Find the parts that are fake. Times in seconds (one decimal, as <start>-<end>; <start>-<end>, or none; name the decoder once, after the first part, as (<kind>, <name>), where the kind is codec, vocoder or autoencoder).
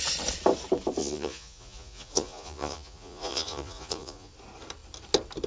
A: 1.0-4.3 (vocoder, Vocos)